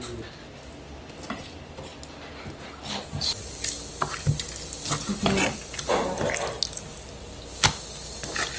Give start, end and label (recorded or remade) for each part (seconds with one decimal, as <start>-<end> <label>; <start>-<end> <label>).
0.0-8.6 recorded